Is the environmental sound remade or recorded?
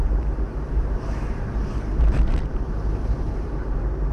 remade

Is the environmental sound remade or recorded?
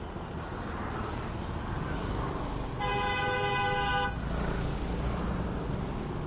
recorded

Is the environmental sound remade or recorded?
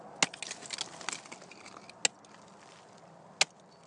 recorded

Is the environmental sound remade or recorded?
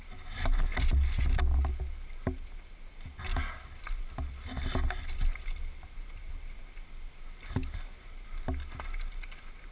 recorded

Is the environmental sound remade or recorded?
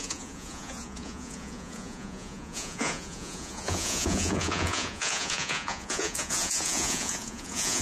remade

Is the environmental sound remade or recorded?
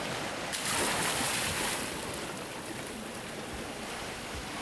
recorded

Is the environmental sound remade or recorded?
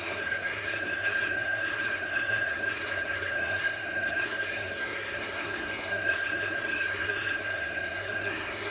remade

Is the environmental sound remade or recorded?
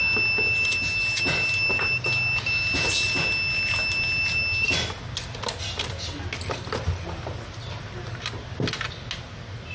recorded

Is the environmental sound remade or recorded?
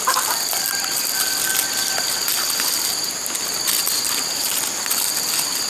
recorded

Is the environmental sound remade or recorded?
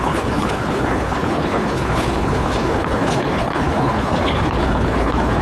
remade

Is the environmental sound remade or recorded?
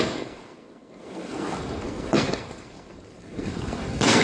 remade